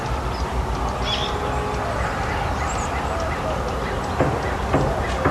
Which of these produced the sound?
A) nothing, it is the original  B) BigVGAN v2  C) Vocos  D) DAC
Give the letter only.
A